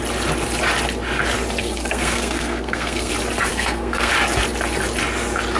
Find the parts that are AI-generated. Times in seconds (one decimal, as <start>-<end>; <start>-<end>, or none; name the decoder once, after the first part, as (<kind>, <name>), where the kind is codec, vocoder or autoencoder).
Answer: 1.6-3.1 (codec, SNAC); 3.5-4.1

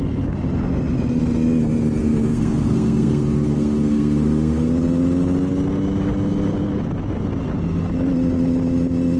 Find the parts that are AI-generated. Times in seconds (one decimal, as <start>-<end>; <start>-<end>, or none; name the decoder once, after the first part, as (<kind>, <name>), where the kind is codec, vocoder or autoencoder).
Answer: 2.0-4.7 (codec, SNAC)

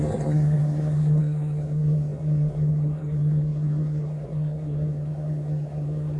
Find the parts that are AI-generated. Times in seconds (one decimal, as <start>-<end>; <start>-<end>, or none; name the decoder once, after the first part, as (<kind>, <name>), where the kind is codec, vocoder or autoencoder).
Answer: 0.0-6.2 (codec, SNAC)